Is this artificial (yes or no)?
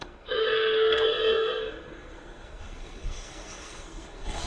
yes